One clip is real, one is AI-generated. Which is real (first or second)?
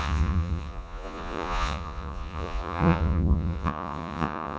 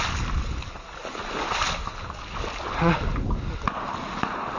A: second